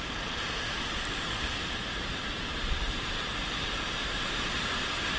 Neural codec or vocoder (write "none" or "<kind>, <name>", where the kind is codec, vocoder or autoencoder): vocoder, BigVGAN v2